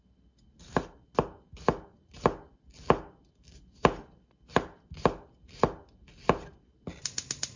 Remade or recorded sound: recorded